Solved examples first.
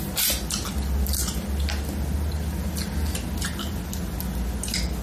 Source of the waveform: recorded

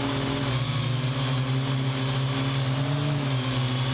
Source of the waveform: recorded